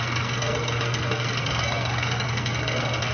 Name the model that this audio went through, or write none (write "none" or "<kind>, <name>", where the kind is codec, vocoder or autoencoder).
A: codec, SNAC